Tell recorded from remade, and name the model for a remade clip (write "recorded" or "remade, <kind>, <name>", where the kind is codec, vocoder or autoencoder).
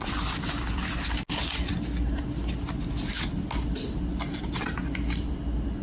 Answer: recorded